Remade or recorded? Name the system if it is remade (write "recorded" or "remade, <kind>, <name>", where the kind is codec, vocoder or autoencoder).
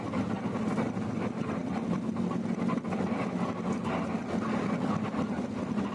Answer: recorded